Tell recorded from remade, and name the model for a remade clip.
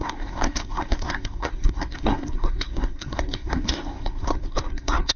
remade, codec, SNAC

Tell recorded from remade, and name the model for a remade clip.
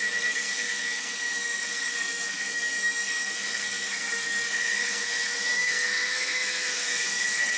remade, codec, SNAC